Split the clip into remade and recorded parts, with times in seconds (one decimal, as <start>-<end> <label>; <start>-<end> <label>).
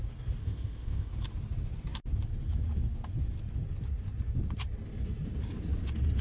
0.0-0.4 recorded; 0.4-1.1 remade; 1.1-6.2 recorded